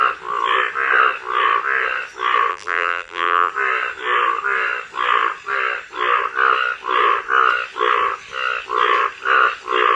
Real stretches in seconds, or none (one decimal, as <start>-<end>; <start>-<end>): 0.0-2.5; 3.5-9.9

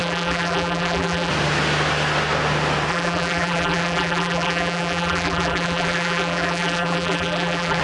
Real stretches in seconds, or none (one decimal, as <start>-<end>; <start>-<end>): 1.3-2.9

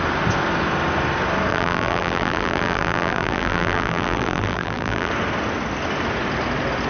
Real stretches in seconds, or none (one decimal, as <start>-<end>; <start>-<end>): 0.0-1.5; 5.1-6.9

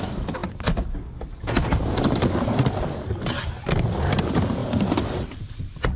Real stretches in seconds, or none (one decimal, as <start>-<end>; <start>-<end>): 0.0-4.6; 5.6-6.0

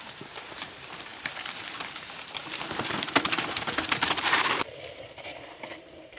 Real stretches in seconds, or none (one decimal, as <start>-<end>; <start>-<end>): none